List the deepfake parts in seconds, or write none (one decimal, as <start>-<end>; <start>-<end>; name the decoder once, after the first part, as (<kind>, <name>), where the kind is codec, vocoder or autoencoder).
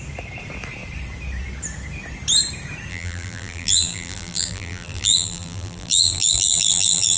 2.9-7.2 (vocoder, BigVGAN v2)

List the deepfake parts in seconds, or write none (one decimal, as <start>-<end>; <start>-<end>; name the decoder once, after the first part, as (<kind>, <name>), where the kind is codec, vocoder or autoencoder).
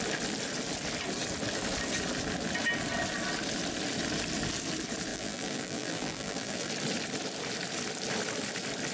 5.1-6.7 (vocoder, BigVGAN v2)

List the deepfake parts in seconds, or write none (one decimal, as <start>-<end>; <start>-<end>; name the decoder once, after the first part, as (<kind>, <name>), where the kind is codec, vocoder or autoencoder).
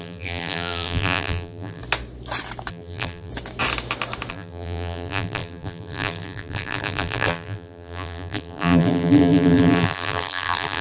0.0-1.8 (vocoder, BigVGAN v2); 2.7-3.3; 4.3-10.8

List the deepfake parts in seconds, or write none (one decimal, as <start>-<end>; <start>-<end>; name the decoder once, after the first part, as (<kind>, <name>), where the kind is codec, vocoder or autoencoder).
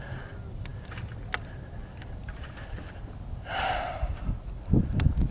0.0-0.7 (vocoder, BigVGAN v2); 3.9-5.3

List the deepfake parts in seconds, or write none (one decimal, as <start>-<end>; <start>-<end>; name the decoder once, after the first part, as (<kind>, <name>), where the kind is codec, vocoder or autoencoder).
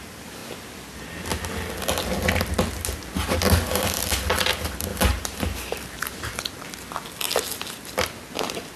4.9-6.5 (vocoder, BigVGAN v2)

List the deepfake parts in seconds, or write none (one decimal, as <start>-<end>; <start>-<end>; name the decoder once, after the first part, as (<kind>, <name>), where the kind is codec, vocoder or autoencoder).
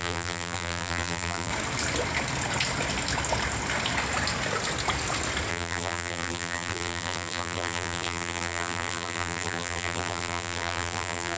0.0-1.5 (vocoder, BigVGAN v2); 5.5-11.4